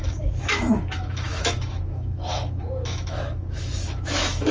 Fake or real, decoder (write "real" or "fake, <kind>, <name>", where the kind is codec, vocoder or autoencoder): fake, autoencoder, DAC-VAE